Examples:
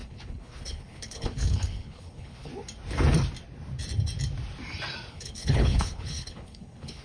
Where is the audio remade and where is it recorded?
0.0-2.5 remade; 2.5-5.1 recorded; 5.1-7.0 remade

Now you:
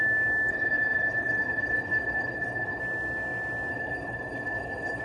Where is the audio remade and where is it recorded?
0.0-0.5 recorded; 0.5-2.8 remade; 2.8-3.7 recorded; 3.7-5.0 remade

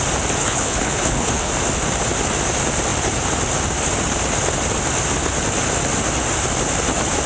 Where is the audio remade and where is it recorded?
0.0-0.4 recorded; 0.4-1.5 remade; 1.5-7.3 recorded

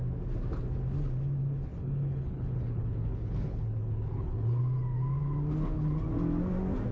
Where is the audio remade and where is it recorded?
0.0-1.4 recorded; 1.4-4.6 remade; 4.6-6.9 recorded

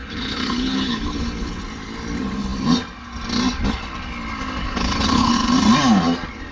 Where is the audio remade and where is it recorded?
0.0-1.6 remade; 1.6-4.6 recorded; 4.6-5.5 remade; 5.5-6.5 recorded